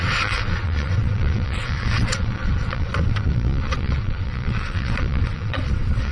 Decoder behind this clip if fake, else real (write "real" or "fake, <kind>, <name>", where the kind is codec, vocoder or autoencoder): fake, vocoder, WaveNeXt